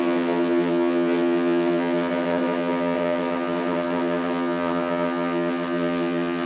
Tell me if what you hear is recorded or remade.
remade